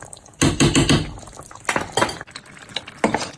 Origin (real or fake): real